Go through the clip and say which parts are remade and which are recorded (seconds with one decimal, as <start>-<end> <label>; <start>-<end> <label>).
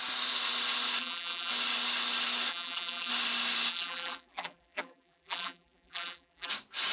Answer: 0.0-1.0 recorded; 1.0-1.5 remade; 1.5-2.5 recorded; 2.5-3.1 remade; 3.1-3.7 recorded; 3.7-6.5 remade; 6.5-6.9 recorded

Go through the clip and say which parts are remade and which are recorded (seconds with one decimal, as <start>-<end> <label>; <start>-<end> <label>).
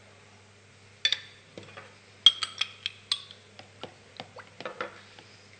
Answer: 0.0-5.6 recorded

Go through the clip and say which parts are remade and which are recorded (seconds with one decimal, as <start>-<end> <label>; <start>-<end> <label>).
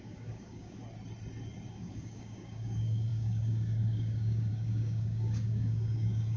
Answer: 0.0-0.8 remade; 0.8-1.7 recorded; 1.7-6.4 remade